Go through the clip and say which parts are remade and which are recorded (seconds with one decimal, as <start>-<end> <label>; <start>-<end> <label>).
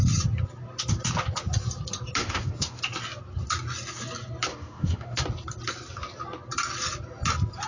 0.0-2.2 recorded; 2.2-2.8 remade; 2.8-4.5 recorded; 4.5-5.2 remade; 5.2-7.7 recorded